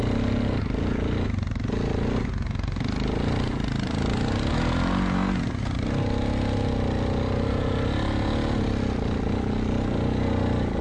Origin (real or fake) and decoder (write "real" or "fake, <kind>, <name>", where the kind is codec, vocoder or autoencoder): real